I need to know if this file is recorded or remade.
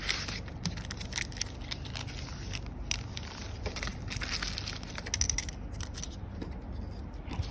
recorded